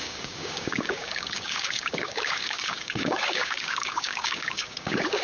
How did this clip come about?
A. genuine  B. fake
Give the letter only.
B